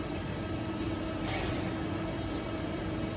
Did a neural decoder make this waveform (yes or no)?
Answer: yes